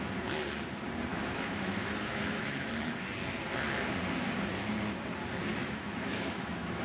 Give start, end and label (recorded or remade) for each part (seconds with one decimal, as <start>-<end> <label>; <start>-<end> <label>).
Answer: 0.0-1.1 recorded; 1.1-2.7 remade; 2.7-5.5 recorded; 5.5-6.8 remade